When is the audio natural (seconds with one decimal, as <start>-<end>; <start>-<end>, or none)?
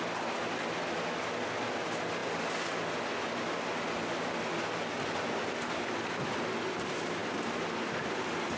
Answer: 0.0-8.6